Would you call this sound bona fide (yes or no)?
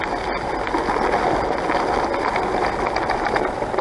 yes